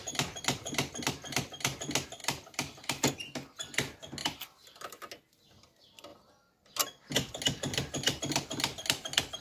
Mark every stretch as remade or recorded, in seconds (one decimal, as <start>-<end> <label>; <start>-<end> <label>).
0.0-2.2 recorded; 2.2-3.1 remade; 3.1-4.2 recorded; 4.2-5.1 remade; 5.1-9.4 recorded